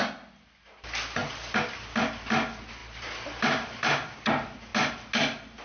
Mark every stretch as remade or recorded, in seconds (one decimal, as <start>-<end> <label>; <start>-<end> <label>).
0.0-2.8 recorded; 2.8-4.3 remade; 4.3-5.6 recorded